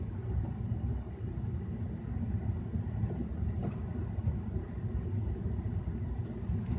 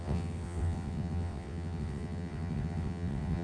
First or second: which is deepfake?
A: second